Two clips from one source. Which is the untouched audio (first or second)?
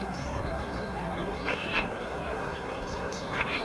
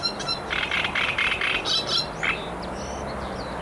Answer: second